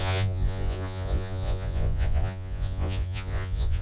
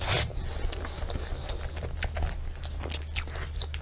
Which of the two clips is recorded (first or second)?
second